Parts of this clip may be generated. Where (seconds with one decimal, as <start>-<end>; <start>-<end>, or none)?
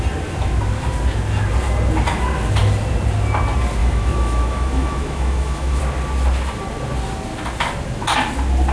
3.8-5.8